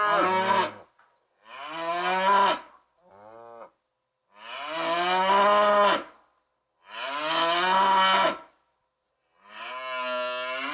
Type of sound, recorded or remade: recorded